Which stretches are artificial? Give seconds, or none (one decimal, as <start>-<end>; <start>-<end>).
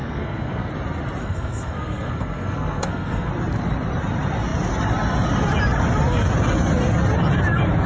0.0-0.7; 1.2-3.3